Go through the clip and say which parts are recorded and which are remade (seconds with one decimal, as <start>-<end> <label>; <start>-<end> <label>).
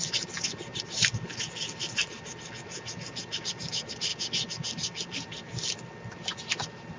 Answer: 0.0-7.0 recorded